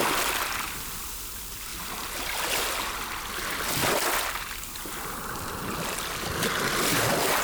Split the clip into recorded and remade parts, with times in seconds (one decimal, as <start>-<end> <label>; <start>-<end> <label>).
0.0-1.7 recorded; 1.7-2.7 remade; 2.7-7.4 recorded